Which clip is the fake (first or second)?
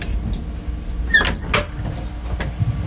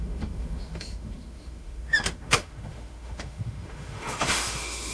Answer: second